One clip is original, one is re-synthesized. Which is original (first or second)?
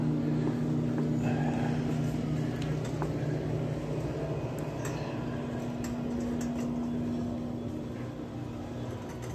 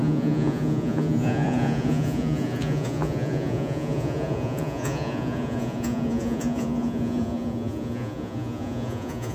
first